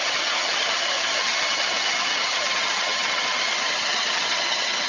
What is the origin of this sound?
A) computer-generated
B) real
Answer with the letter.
A